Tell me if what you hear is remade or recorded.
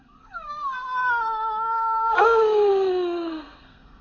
remade